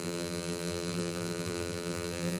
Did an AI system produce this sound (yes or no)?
yes